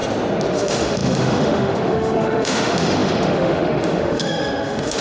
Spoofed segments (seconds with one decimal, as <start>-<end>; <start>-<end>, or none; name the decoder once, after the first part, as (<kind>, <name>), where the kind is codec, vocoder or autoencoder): 0.5-5.0 (autoencoder, DAC-VAE)